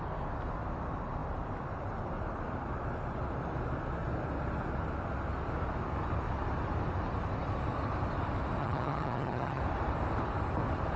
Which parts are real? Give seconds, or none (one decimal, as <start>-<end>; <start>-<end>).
0.0-8.6; 9.6-11.0